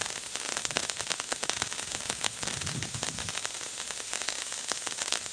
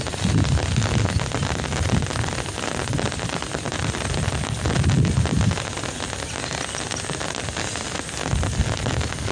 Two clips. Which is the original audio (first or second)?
second